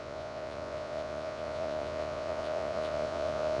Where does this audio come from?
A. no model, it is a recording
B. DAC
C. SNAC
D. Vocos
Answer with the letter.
D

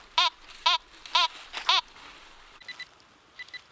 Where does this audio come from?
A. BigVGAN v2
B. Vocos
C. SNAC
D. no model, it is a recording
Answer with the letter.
D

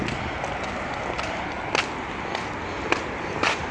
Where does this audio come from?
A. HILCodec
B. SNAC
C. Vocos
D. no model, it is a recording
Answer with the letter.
D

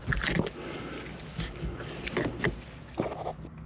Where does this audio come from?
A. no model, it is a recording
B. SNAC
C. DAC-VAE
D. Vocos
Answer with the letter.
A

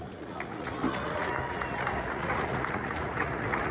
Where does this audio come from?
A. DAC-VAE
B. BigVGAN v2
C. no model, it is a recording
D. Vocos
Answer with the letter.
D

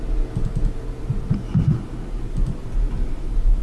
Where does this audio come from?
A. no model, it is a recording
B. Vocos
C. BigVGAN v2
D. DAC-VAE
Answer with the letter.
A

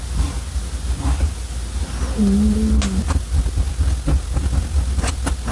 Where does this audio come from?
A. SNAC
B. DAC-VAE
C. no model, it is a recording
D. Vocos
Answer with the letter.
C